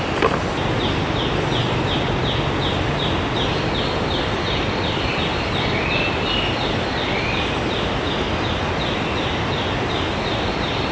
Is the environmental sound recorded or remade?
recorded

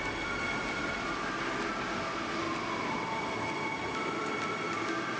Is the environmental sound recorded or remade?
recorded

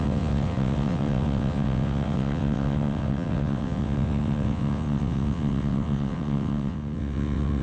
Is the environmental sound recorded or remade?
remade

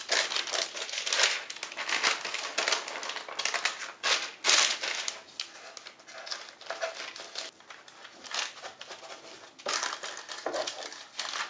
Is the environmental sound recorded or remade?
recorded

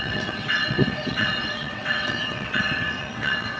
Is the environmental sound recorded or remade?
remade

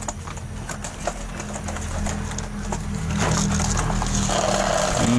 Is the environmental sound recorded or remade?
recorded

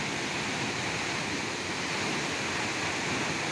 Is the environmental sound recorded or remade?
recorded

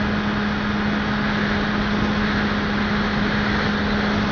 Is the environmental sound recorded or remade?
recorded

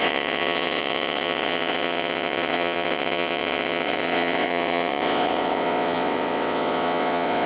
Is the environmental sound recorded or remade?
remade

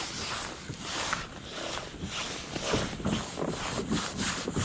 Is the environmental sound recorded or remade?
recorded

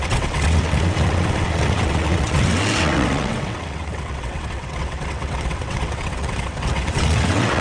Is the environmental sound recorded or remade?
remade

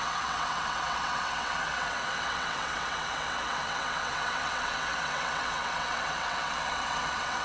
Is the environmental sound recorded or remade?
remade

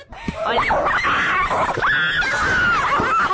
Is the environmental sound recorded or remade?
recorded